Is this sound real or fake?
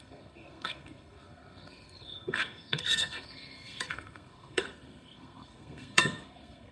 fake